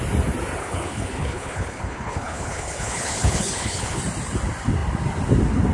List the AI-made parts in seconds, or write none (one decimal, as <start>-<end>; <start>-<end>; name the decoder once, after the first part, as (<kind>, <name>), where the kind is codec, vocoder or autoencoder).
0.6-4.0 (codec, HILCodec)